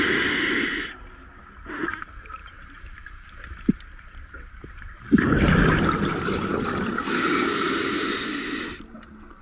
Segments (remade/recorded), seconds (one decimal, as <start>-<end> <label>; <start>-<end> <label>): 0.0-2.4 recorded; 2.4-5.0 remade; 5.0-9.4 recorded